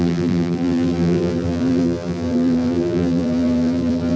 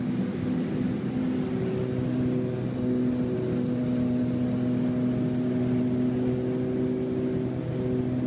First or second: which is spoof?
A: first